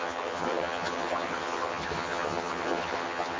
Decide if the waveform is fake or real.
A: fake